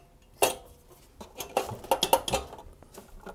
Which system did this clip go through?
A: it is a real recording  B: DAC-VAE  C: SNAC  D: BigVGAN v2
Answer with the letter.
A